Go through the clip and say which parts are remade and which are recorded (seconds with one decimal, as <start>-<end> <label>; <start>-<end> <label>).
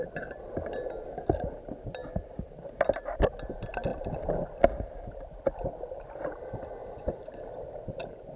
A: 0.0-8.4 recorded